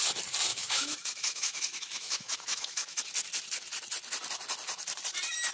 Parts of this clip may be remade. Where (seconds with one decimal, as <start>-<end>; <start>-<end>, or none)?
0.5-3.0